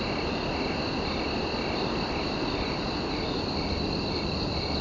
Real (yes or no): yes